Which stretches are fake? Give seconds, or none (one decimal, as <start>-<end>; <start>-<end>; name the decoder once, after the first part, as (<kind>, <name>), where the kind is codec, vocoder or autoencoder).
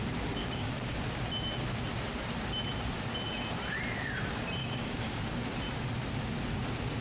0.4-1.0 (codec, DAC); 4.6-5.2